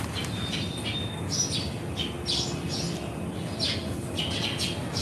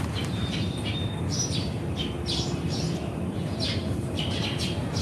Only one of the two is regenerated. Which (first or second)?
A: second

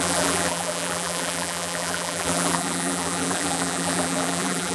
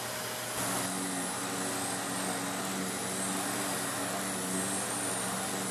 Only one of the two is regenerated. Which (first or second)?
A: first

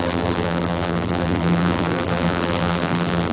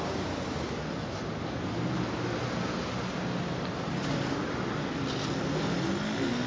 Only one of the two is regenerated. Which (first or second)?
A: first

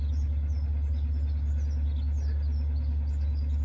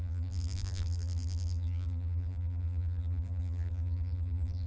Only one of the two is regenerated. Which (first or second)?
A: second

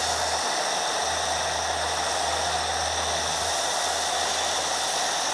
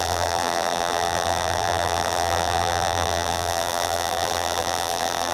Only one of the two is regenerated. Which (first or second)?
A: second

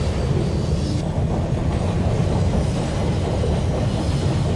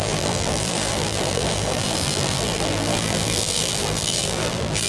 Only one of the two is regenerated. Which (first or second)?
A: second